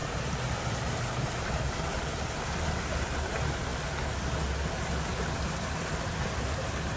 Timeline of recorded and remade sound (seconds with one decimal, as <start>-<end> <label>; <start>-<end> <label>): 0.0-3.3 remade; 3.3-7.0 recorded